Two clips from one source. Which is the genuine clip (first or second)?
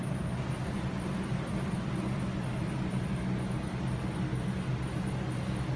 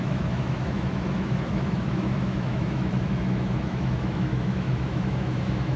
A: first